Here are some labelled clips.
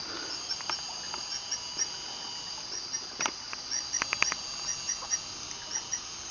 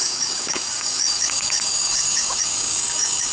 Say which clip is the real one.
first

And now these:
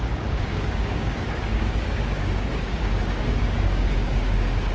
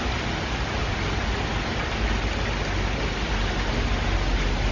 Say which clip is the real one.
second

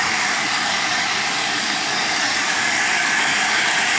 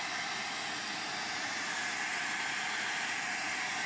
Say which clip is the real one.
second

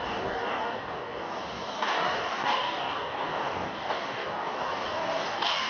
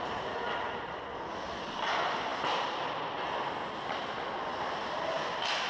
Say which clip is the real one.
second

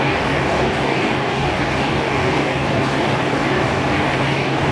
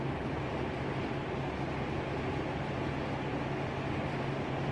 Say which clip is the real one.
second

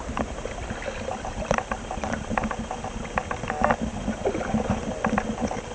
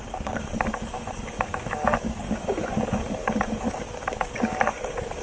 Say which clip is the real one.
first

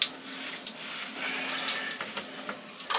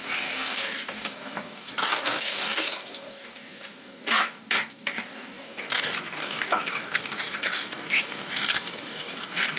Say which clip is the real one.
first